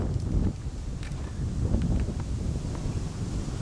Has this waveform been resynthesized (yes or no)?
no